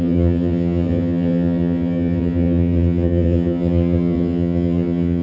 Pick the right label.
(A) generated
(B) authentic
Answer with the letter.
A